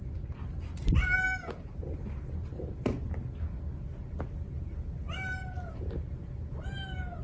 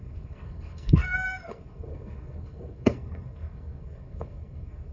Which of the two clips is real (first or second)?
first